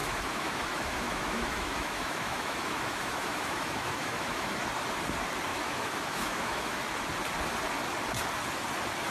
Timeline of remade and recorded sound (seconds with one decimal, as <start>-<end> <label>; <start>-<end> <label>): 0.0-4.6 remade; 4.6-5.5 recorded; 5.5-6.8 remade; 6.8-9.1 recorded